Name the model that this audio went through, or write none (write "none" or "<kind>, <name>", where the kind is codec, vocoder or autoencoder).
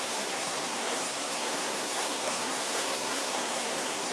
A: codec, SNAC